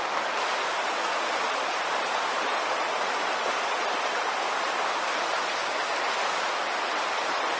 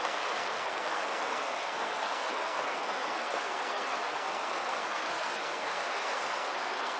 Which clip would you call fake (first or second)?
second